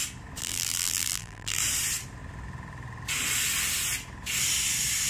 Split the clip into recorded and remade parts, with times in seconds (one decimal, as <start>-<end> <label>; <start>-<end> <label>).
0.0-0.4 recorded; 0.4-1.6 remade; 1.6-5.1 recorded